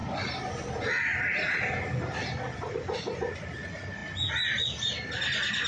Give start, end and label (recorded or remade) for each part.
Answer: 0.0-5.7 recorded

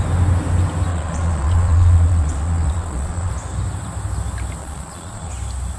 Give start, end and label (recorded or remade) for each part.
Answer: 0.0-0.9 recorded; 0.9-3.3 remade; 3.3-4.6 recorded; 4.6-5.3 remade; 5.3-5.8 recorded

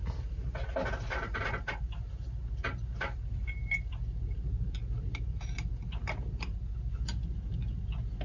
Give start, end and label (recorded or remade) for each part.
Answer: 0.0-1.1 recorded; 1.1-1.8 remade; 1.8-8.2 recorded

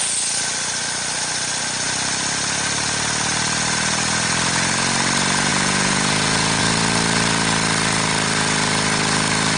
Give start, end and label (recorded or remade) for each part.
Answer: 0.0-5.5 recorded; 5.5-6.6 remade; 6.6-9.6 recorded

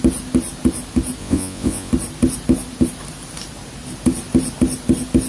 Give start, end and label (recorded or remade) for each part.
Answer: 0.0-1.2 recorded; 1.2-1.9 remade; 1.9-5.3 recorded

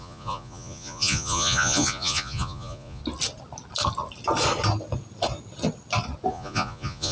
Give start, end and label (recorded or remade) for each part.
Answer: 0.0-3.0 remade; 3.0-6.3 recorded; 6.3-7.1 remade

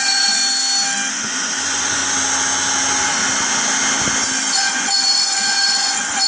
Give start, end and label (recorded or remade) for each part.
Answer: 0.0-0.4 remade; 0.4-1.1 recorded; 1.1-2.0 remade; 2.0-4.5 recorded; 4.5-6.3 remade